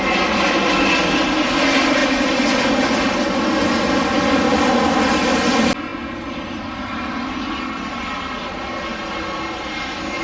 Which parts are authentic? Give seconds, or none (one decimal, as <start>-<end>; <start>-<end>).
0.0-10.2